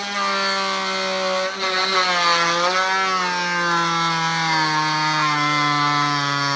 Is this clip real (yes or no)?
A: yes